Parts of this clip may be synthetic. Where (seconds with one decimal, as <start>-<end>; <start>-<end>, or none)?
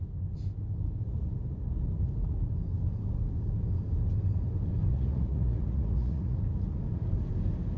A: 4.9-6.4